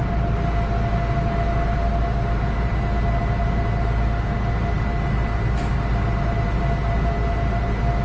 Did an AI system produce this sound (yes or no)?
no